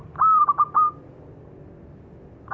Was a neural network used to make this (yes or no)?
no